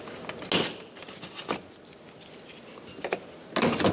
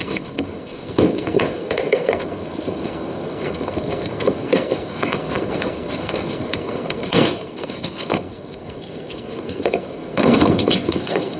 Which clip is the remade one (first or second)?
second